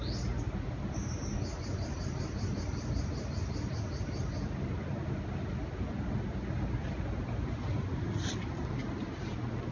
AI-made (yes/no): no